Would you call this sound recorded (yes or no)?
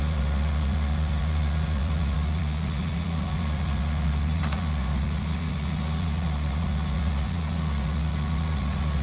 no